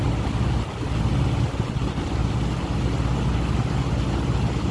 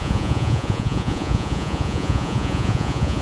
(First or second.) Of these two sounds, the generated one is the second